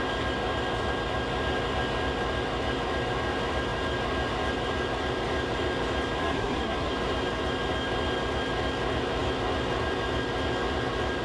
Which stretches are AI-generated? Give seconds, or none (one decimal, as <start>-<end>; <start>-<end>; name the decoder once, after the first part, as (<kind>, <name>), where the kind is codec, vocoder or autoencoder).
6.2-6.9 (codec, SNAC)